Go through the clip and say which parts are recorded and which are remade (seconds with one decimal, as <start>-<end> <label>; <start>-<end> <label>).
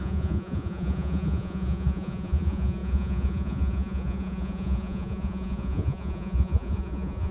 0.0-7.3 remade